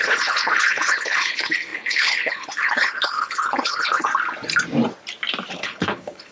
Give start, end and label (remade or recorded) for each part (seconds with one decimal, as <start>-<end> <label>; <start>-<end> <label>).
0.0-4.1 remade; 4.1-5.5 recorded; 5.5-6.3 remade